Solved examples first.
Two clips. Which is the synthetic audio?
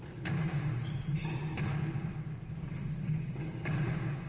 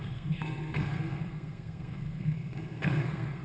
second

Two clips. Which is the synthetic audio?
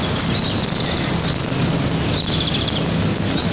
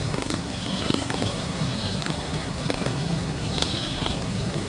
second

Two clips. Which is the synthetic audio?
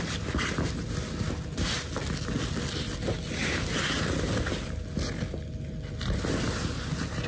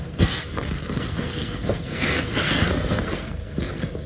second